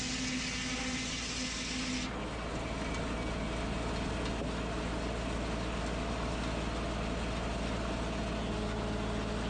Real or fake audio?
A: real